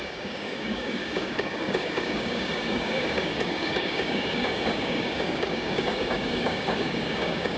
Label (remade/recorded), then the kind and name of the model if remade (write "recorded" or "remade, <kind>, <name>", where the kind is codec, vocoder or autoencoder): remade, codec, DAC